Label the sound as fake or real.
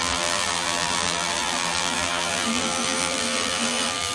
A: fake